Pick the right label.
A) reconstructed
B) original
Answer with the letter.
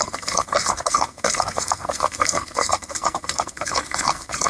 A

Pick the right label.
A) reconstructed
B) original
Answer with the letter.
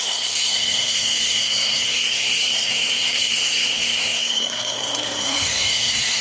A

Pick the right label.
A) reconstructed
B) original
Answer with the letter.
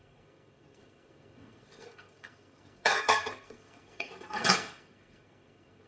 A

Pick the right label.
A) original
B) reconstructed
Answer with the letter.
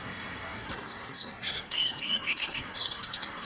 B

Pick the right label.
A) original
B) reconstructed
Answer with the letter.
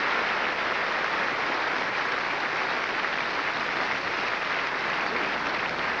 A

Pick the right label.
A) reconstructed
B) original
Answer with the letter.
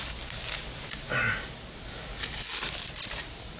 B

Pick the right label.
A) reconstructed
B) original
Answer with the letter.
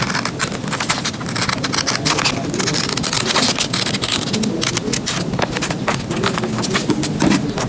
B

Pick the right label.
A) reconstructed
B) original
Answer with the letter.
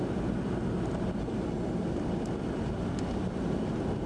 B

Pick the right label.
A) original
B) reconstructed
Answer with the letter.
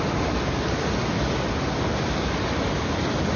A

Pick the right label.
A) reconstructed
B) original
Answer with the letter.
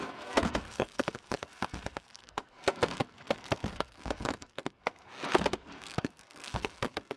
A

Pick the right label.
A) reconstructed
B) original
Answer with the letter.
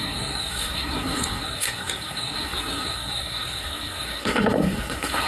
A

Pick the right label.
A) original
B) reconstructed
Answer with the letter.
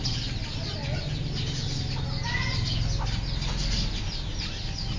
A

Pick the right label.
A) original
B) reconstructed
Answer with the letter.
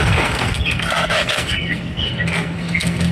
B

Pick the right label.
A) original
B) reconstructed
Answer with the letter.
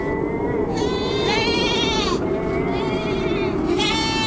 A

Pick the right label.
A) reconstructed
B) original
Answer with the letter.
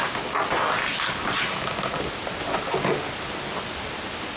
B